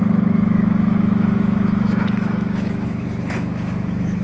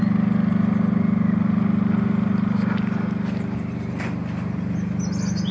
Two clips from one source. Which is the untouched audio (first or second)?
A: second